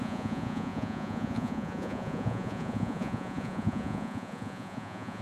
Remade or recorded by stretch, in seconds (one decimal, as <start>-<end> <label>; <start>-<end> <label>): 0.0-5.2 remade